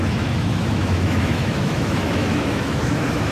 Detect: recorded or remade remade